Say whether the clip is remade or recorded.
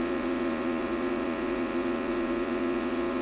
remade